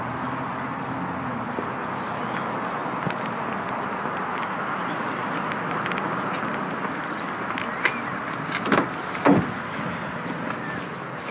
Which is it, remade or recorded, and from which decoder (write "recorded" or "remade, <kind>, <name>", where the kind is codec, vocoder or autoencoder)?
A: recorded